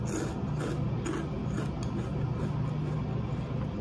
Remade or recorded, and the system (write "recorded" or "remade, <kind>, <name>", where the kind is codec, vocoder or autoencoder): recorded